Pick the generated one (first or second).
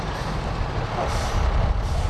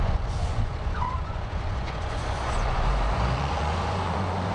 second